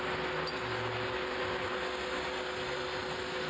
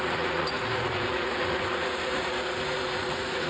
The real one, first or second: first